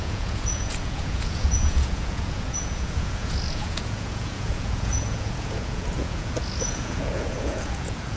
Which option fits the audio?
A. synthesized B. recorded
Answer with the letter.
A